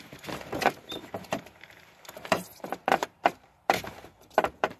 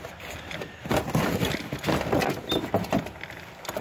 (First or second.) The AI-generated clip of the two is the first